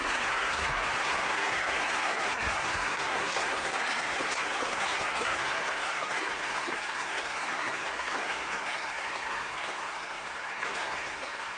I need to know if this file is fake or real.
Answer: fake